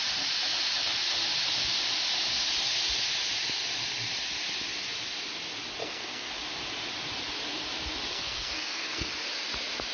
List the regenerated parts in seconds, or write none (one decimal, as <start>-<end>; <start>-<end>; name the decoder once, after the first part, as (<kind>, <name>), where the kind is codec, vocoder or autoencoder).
5.8-6.3 (codec, SNAC); 8.1-9.1